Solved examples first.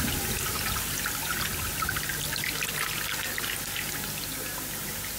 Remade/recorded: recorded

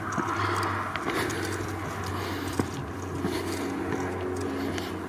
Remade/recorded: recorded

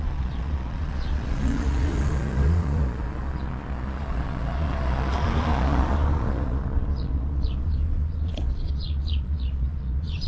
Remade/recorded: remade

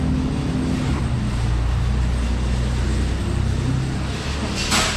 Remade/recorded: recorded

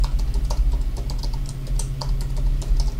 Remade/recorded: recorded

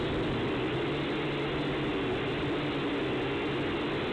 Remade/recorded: recorded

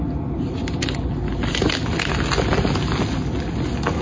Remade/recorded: recorded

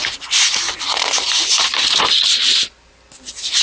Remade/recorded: recorded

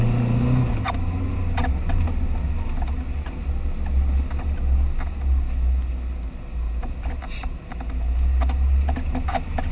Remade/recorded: recorded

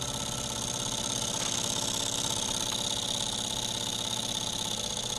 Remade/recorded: recorded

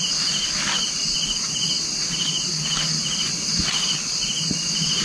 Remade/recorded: recorded